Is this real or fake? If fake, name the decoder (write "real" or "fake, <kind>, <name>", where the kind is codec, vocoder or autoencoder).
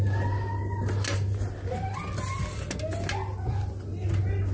real